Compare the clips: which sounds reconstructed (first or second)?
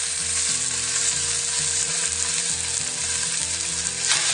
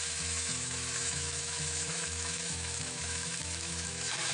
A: second